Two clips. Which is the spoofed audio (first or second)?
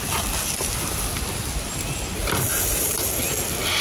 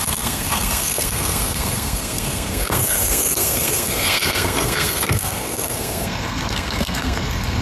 second